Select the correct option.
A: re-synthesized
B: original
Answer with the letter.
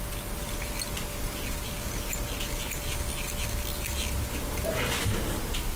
B